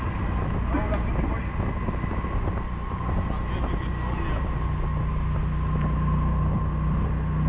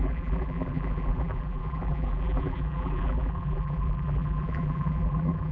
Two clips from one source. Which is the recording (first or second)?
first